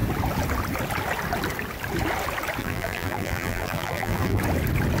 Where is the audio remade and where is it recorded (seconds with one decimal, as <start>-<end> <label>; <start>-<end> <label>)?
0.0-2.6 recorded; 2.6-4.4 remade; 4.4-5.0 recorded